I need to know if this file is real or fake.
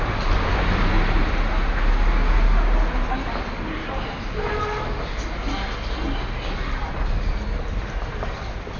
real